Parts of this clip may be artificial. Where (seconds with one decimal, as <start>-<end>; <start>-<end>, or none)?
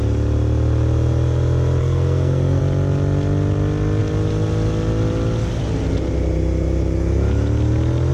1.8-2.6